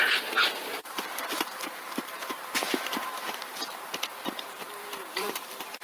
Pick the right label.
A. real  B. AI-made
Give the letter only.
B